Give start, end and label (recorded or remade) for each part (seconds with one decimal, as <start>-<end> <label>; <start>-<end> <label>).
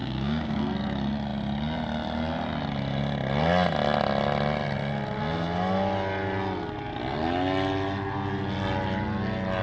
0.0-0.6 remade; 0.6-9.6 recorded